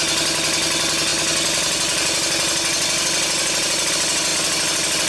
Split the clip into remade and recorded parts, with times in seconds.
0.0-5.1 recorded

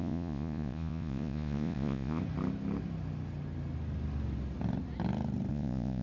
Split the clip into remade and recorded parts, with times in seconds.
0.0-2.2 remade; 2.2-5.5 recorded; 5.5-6.0 remade

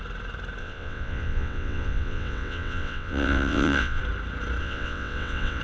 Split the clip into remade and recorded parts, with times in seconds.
0.0-0.6 recorded; 0.6-4.0 remade; 4.0-4.6 recorded; 4.6-5.6 remade

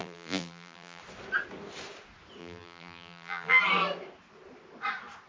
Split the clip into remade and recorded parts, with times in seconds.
0.0-1.0 remade; 1.0-2.4 recorded; 2.4-3.6 remade; 3.6-5.3 recorded

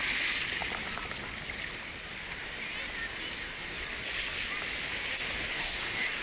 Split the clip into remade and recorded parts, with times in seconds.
0.0-3.4 recorded; 3.4-3.9 remade; 3.9-5.5 recorded; 5.5-6.2 remade